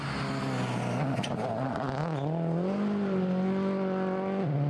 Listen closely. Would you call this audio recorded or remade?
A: recorded